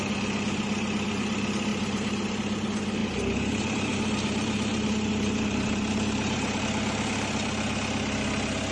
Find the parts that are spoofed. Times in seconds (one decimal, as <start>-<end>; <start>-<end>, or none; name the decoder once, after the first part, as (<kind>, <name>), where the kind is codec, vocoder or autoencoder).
1.7-2.3 (vocoder, BigVGAN v2); 3.0-6.6